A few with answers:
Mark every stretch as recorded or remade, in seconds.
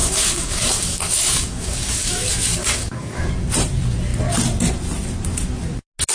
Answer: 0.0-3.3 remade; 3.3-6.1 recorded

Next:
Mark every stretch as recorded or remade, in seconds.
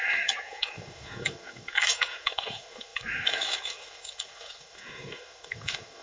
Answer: 0.0-6.0 remade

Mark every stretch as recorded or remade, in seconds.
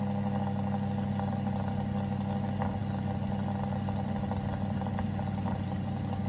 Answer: 0.0-6.3 recorded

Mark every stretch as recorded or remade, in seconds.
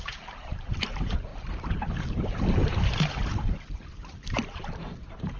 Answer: 0.0-5.4 remade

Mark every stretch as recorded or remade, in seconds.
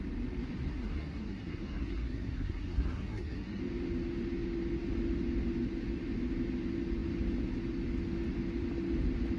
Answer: 0.0-0.7 recorded; 0.7-3.6 remade; 3.6-9.4 recorded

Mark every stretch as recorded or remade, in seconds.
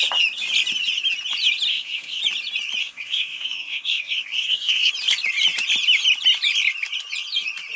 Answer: 0.0-1.7 recorded; 1.7-2.2 remade; 2.2-2.8 recorded; 2.8-4.9 remade; 4.9-7.8 recorded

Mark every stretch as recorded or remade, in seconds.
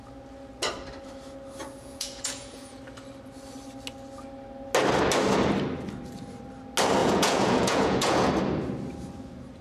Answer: 0.0-1.8 recorded; 1.8-2.8 remade; 2.8-7.0 recorded; 7.0-8.3 remade; 8.3-9.6 recorded